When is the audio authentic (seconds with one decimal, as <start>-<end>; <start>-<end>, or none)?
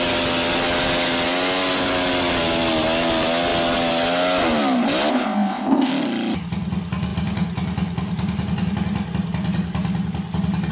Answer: 0.0-5.1; 5.9-10.7